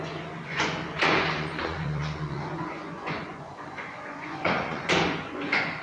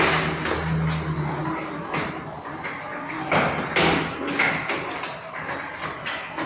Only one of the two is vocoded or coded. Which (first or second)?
first